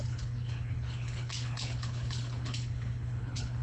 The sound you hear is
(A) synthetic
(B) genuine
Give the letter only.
A